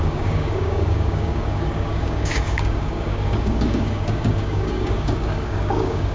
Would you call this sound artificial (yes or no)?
yes